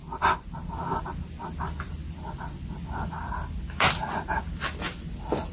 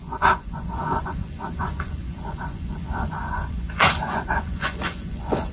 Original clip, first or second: first